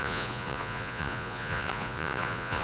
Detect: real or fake fake